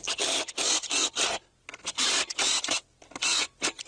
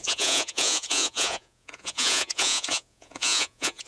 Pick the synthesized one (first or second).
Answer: second